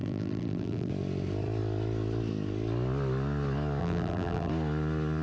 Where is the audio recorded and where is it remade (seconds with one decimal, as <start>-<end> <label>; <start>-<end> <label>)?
0.0-0.9 remade; 0.9-3.8 recorded; 3.8-4.5 remade; 4.5-5.2 recorded